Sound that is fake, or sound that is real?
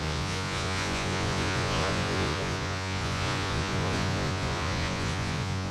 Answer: fake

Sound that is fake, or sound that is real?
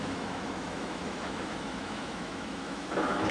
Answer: fake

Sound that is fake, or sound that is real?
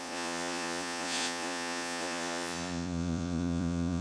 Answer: fake